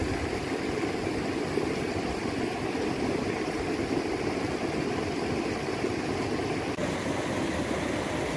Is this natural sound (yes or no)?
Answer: yes